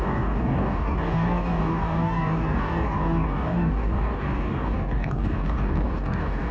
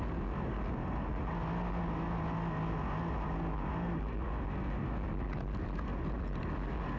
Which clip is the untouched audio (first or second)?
second